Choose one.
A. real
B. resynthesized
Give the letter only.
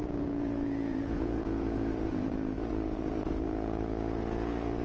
B